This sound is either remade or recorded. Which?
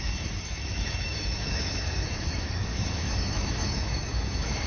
remade